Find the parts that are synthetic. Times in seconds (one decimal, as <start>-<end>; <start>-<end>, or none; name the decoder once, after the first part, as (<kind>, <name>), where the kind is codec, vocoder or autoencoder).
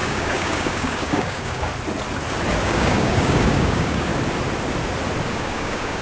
0.0-1.7 (codec, DAC); 2.6-4.1; 5.3-6.0